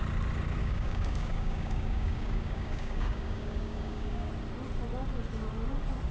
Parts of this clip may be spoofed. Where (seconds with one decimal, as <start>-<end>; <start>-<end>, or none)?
0.6-4.3